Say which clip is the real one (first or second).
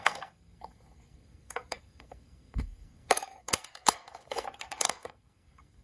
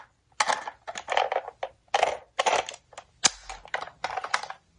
second